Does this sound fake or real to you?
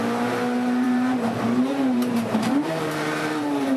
fake